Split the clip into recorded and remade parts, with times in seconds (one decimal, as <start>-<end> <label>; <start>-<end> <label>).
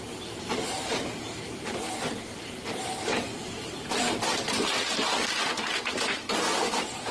0.0-5.1 remade; 5.1-6.3 recorded; 6.3-7.1 remade